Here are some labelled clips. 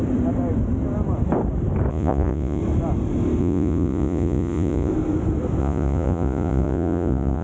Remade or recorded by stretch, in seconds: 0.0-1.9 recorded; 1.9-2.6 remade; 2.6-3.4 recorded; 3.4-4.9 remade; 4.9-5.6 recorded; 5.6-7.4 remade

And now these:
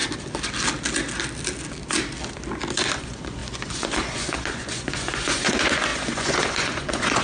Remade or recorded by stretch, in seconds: 0.0-3.0 recorded; 3.0-7.2 remade

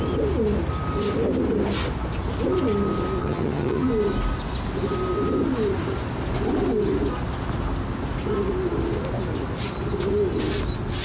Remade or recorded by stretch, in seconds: 0.0-3.2 recorded; 3.2-3.9 remade; 3.9-11.0 recorded